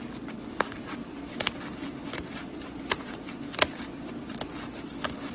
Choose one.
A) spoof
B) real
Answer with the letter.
B